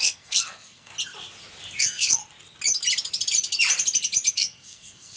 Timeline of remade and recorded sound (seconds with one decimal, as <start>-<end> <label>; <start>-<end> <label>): 0.0-0.9 remade; 0.9-1.8 recorded; 1.8-2.2 remade; 2.2-4.3 recorded; 4.3-5.2 remade

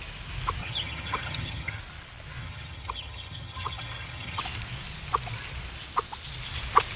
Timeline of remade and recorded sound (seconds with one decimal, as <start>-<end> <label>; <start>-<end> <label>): 0.0-0.6 recorded; 0.6-1.8 remade; 1.8-2.4 recorded; 2.4-4.4 remade; 4.4-7.0 recorded

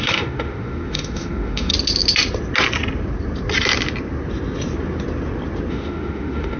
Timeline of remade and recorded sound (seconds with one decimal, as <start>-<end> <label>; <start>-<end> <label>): 0.0-1.7 remade; 1.7-5.7 recorded; 5.7-6.6 remade